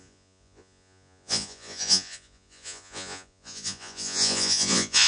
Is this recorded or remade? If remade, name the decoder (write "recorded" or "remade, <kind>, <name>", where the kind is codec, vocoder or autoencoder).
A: remade, vocoder, Vocos